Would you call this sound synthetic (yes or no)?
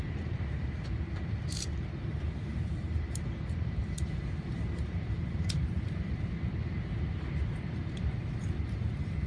yes